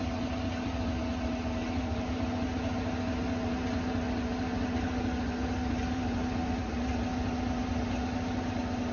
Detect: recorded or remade recorded